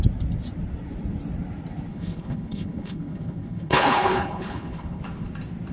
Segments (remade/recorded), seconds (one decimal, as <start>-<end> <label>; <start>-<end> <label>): 0.0-1.9 recorded; 1.9-5.0 remade; 5.0-5.7 recorded